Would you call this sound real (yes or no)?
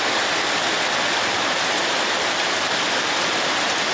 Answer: yes